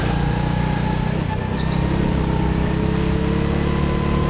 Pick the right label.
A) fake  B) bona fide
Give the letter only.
B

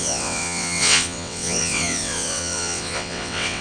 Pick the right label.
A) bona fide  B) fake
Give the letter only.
B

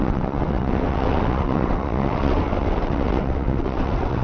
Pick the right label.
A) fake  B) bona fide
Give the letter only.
A